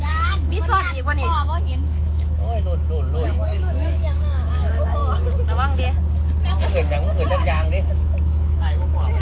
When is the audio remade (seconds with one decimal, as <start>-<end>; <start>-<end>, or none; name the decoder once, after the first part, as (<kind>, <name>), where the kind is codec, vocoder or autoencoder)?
0.0-5.0 (autoencoder, DAC-VAE); 7.3-9.2